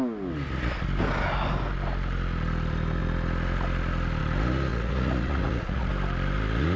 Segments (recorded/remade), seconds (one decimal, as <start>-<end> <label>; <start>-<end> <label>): 0.0-4.7 recorded; 4.7-5.9 remade; 5.9-6.8 recorded